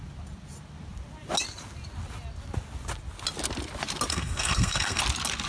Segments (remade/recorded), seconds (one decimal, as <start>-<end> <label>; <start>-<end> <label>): 0.0-4.1 recorded; 4.1-5.0 remade; 5.0-5.5 recorded